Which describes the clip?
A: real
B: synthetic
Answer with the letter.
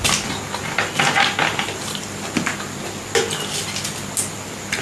A